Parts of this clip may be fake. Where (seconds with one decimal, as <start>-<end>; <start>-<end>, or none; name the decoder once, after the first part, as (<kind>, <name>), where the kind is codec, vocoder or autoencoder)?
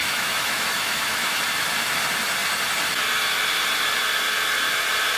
0.0-1.4 (autoencoder, DAC-VAE)